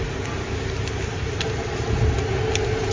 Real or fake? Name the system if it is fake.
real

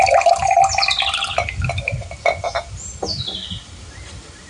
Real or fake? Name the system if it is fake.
real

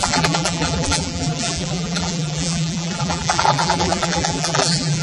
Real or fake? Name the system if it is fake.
fake, vocoder, BigVGAN v2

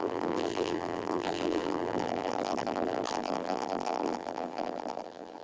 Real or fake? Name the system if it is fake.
fake, vocoder, BigVGAN v2